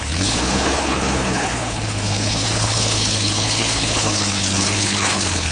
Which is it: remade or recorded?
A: remade